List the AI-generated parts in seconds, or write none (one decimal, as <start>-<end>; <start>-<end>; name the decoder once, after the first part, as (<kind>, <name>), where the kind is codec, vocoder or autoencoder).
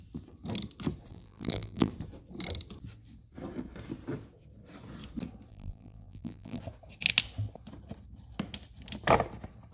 1.1-1.9 (vocoder, BigVGAN v2); 5.5-6.6